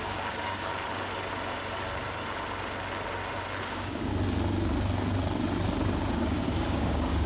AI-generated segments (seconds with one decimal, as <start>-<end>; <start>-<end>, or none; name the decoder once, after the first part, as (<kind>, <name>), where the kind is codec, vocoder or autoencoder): 0.0-0.7 (codec, DAC); 3.6-4.1; 6.2-7.3